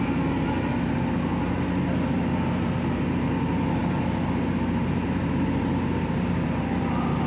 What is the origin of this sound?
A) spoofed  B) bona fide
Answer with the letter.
B